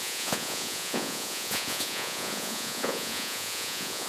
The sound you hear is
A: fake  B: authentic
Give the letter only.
A